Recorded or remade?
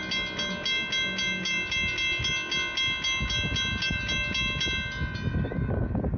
recorded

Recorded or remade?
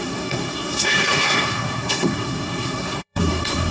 remade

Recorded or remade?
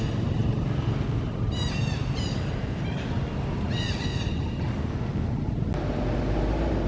recorded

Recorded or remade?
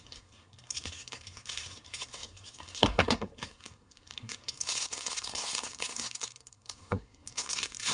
remade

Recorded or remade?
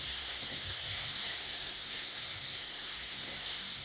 remade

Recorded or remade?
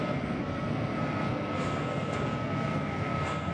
remade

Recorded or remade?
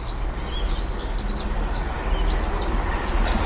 recorded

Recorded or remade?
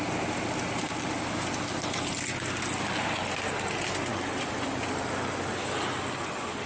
recorded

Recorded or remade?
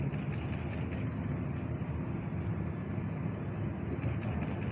recorded